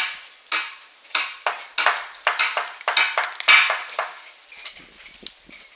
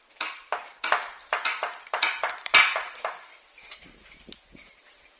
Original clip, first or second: first